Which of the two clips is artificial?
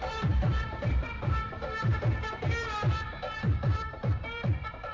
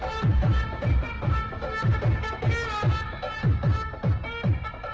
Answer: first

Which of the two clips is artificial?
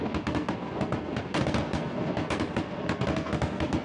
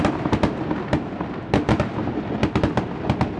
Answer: first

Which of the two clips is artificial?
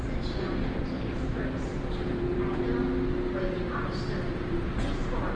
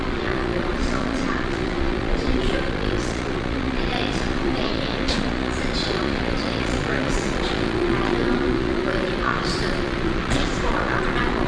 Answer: second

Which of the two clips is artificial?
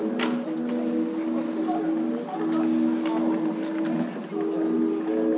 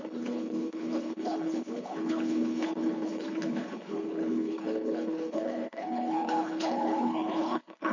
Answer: second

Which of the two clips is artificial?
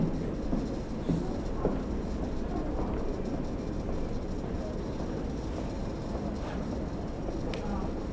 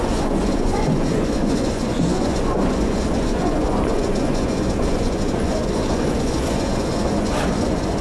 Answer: second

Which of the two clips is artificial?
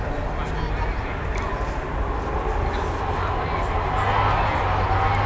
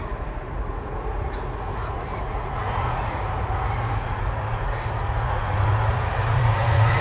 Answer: second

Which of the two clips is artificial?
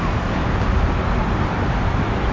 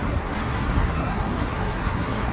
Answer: second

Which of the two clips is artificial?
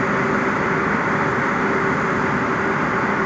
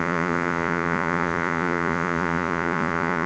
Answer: second